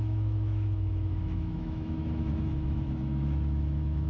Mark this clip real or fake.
fake